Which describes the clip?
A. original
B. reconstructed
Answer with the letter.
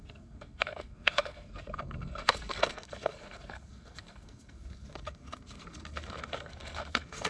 B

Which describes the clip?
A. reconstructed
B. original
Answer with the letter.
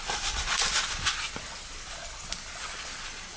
B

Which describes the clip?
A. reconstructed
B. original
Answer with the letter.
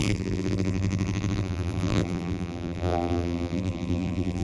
A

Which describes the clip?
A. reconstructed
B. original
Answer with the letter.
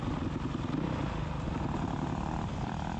B